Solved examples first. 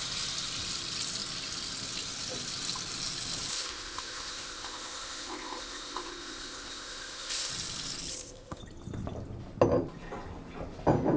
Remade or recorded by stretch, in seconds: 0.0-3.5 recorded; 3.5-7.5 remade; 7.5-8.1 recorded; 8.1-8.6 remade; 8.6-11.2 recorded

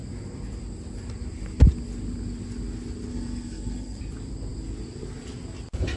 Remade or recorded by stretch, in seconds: 0.0-3.1 recorded; 3.1-4.0 remade; 4.0-6.0 recorded